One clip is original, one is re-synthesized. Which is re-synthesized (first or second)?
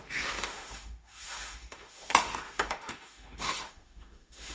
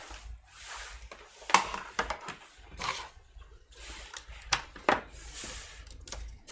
first